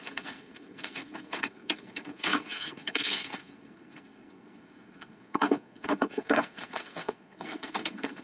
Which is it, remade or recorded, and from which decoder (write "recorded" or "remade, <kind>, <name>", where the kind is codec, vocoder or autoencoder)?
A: remade, codec, SNAC